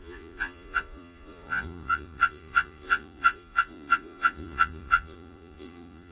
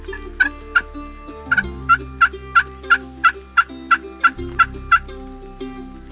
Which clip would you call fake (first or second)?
first